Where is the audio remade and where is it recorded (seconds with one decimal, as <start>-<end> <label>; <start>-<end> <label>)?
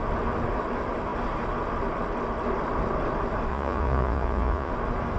0.0-3.5 recorded; 3.5-4.7 remade; 4.7-5.2 recorded